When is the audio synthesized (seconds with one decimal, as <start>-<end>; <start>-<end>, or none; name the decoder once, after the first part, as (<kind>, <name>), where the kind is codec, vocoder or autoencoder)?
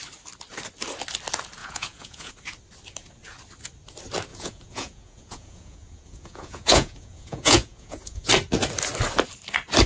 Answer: 1.6-2.3 (vocoder, Vocos); 4.3-8.3